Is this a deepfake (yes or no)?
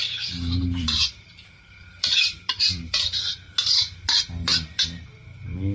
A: yes